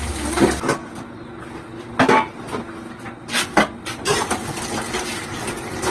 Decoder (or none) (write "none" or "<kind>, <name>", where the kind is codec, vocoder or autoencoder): none